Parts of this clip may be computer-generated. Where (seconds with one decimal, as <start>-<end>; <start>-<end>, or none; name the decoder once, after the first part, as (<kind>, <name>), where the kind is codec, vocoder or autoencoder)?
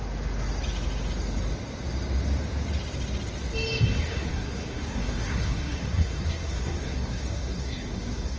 4.1-8.4 (codec, SNAC)